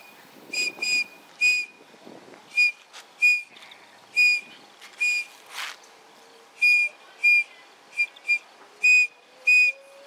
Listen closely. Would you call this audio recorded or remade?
recorded